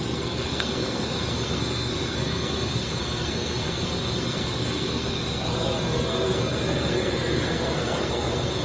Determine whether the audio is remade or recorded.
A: remade